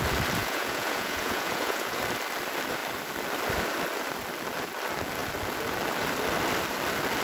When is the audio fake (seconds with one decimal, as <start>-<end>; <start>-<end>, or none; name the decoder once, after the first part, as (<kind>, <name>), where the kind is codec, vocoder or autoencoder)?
0.4-2.0 (vocoder, Vocos)